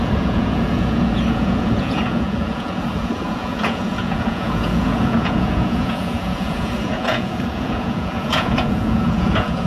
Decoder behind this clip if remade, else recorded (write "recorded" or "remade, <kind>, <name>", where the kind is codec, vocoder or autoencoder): remade, vocoder, Vocos